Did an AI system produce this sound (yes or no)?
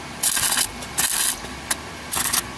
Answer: no